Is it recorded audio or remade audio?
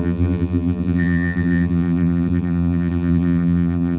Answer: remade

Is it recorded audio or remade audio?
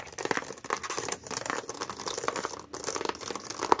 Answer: recorded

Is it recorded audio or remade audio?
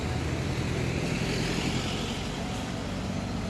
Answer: recorded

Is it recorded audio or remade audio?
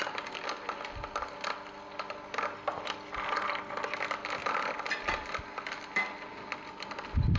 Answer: recorded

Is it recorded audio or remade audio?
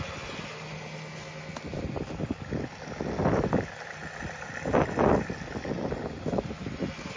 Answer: recorded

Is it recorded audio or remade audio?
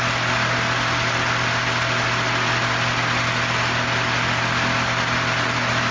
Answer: recorded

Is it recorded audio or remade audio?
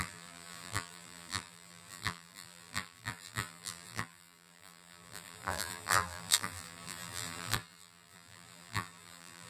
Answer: remade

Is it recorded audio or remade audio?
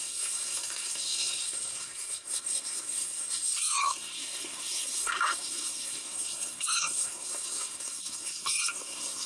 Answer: remade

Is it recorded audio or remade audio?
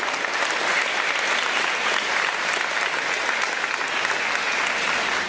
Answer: recorded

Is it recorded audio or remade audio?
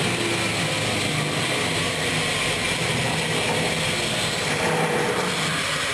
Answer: recorded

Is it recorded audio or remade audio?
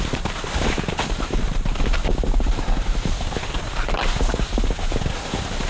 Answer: recorded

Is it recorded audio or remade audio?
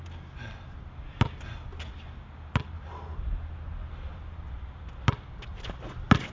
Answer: recorded